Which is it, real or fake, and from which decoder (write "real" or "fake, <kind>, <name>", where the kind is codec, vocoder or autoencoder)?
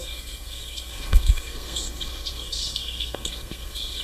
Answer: fake, codec, SNAC